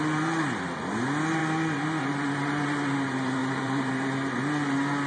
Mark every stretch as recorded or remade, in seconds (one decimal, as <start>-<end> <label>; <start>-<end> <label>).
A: 0.0-3.4 recorded; 3.4-3.9 remade; 3.9-5.1 recorded